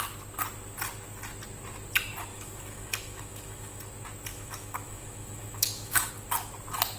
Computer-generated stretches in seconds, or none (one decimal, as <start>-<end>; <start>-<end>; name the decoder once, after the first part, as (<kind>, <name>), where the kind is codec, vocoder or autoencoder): 2.3-3.8 (autoencoder, DAC-VAE); 4.3-6.1